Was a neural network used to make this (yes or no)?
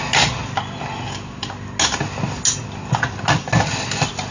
no